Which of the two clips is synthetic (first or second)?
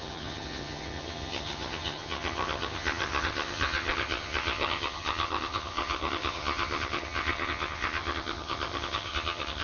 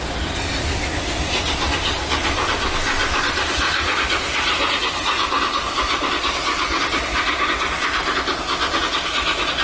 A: first